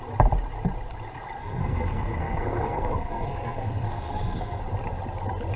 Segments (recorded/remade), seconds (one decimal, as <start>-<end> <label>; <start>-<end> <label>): 0.0-1.4 recorded; 1.4-4.6 remade; 4.6-5.6 recorded